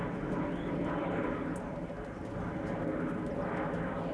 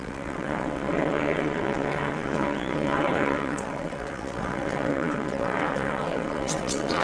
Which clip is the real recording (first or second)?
first